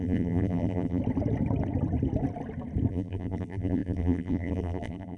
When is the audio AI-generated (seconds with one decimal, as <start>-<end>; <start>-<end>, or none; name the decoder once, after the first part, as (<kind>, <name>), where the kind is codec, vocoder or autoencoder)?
0.0-1.0 (vocoder, BigVGAN v2); 2.9-5.2